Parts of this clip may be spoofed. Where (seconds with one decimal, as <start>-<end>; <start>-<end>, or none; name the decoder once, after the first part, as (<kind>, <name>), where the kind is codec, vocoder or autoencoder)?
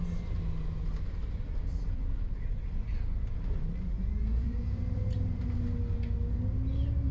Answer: 1.7-5.4 (vocoder, BigVGAN v2)